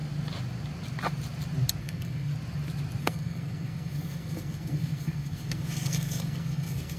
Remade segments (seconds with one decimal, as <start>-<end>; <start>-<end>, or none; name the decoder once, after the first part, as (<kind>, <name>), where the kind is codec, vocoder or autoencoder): 1.8-2.3 (codec, SNAC); 3.0-7.0